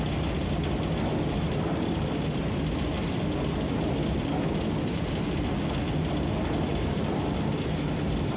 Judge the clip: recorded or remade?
recorded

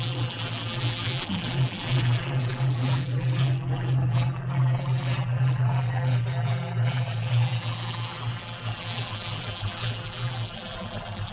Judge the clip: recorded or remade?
remade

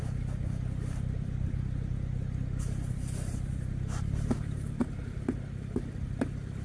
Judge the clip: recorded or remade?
remade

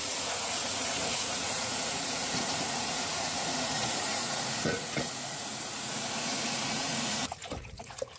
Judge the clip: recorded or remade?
remade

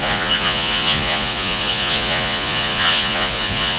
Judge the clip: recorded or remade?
remade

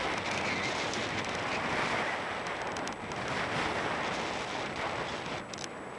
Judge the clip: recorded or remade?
recorded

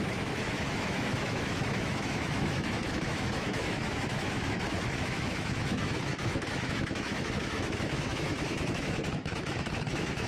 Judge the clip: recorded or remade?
remade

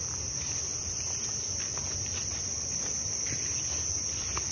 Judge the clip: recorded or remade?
remade